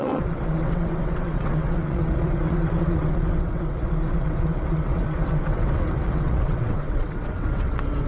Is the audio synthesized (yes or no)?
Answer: yes